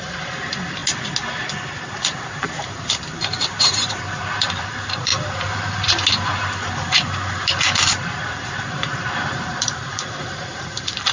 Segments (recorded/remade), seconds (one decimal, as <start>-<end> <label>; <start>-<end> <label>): 0.0-0.8 remade; 0.8-2.0 recorded; 2.0-5.1 remade; 5.1-7.9 recorded; 7.9-11.1 remade